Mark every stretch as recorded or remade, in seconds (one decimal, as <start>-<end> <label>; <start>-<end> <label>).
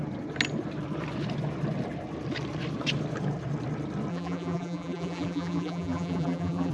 0.0-4.1 recorded; 4.1-6.7 remade